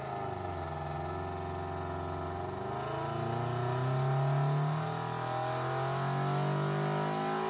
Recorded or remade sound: recorded